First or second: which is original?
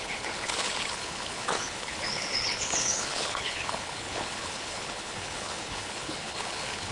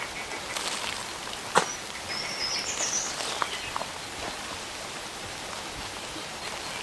second